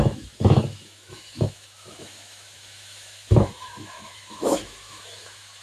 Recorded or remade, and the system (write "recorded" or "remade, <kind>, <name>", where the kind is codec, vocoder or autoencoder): remade, autoencoder, DAC-VAE